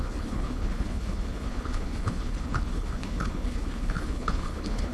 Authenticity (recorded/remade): remade